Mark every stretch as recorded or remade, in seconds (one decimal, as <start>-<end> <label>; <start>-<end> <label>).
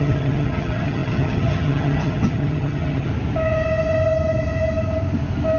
0.0-3.1 remade; 3.1-5.6 recorded